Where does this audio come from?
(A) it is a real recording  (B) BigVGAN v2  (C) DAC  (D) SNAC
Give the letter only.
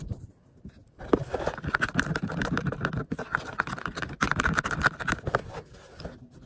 A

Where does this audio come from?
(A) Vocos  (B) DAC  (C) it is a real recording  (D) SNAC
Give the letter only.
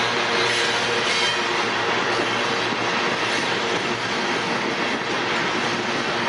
C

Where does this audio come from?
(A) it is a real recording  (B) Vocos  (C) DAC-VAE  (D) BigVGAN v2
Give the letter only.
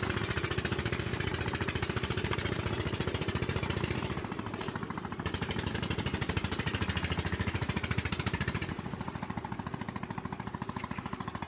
D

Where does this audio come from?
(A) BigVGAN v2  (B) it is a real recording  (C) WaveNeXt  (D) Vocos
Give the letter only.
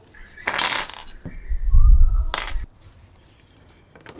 B